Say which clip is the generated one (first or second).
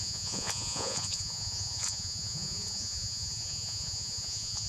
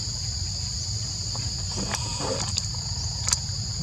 first